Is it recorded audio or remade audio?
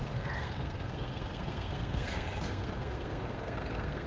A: remade